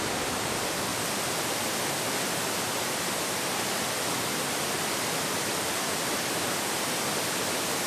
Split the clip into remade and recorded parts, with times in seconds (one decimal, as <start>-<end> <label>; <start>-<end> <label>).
0.0-7.9 recorded

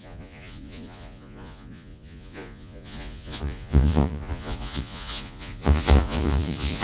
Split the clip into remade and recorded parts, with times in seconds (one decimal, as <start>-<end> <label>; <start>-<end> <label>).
0.0-6.8 remade

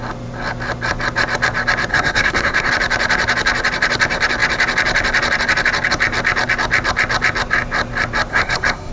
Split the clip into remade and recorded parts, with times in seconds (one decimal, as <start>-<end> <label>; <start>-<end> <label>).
0.0-1.9 recorded; 1.9-2.7 remade; 2.7-8.3 recorded; 8.3-8.9 remade

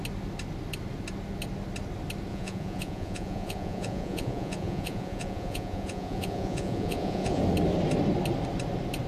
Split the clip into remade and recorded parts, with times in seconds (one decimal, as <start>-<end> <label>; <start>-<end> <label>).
0.0-2.3 recorded; 2.3-7.4 remade; 7.4-9.1 recorded

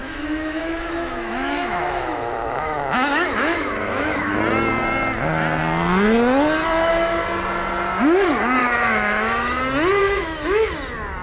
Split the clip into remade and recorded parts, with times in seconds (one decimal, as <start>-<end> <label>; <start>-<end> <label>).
0.0-4.4 remade; 4.4-8.6 recorded; 8.6-9.6 remade; 9.6-10.0 recorded; 10.0-10.7 remade; 10.7-11.2 recorded

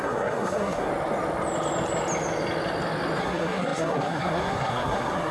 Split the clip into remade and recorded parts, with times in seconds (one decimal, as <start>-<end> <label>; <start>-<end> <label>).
0.0-0.9 remade; 0.9-3.2 recorded; 3.2-5.3 remade

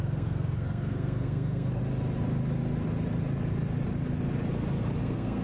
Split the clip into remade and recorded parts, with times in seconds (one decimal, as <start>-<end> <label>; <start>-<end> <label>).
0.0-1.8 remade; 1.8-5.0 recorded; 5.0-5.4 remade